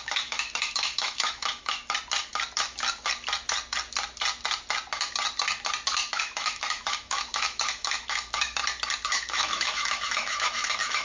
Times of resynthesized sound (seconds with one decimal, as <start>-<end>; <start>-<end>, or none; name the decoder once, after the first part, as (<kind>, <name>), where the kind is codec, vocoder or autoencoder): 0.0-1.8 (autoencoder, DAC-VAE); 6.2-8.6; 9.1-11.0